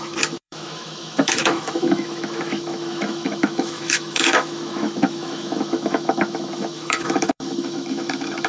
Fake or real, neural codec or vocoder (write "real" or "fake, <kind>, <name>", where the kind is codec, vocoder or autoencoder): fake, autoencoder, DAC-VAE